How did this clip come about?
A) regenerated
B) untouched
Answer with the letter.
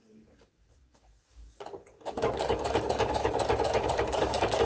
A